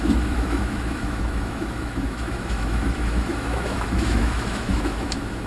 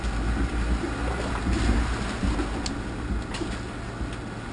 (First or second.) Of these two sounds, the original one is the second